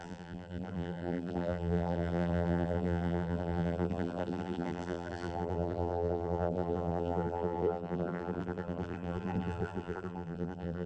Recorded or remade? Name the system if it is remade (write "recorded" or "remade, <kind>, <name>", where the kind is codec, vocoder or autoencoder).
remade, vocoder, BigVGAN v2